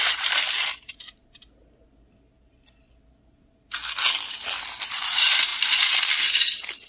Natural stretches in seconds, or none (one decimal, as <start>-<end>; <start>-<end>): 1.2-4.8; 5.5-6.2